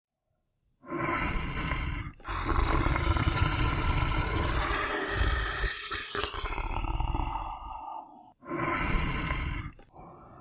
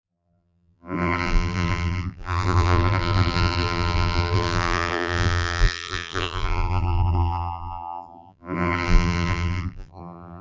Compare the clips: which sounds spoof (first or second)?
second